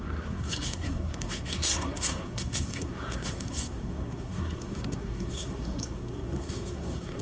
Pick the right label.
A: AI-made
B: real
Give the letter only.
A